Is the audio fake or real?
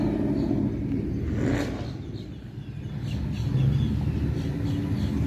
real